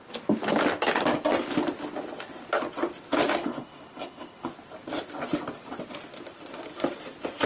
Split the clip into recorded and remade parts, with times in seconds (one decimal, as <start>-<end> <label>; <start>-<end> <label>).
0.0-3.4 recorded; 3.4-4.5 remade; 4.5-7.5 recorded